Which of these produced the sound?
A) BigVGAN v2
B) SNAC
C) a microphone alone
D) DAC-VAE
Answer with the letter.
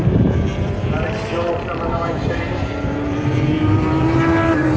A